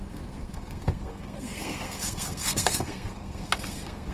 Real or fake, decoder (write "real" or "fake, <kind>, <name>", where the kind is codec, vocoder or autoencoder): fake, codec, SNAC